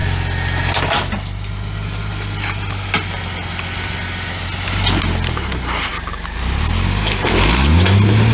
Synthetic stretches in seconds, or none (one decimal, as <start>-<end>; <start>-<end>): none

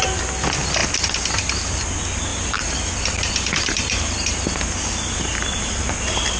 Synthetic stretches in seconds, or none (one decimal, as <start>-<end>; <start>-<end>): 2.3-4.7

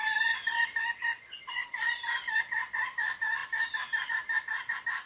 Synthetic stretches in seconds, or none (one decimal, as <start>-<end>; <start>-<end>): 0.0-5.1